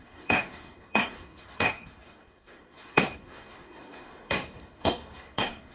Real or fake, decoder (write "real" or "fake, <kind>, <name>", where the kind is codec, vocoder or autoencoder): fake, codec, SNAC